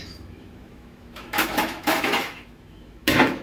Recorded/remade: remade